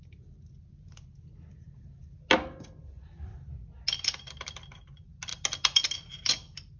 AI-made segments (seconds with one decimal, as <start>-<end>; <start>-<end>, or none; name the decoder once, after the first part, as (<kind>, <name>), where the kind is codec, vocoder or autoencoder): none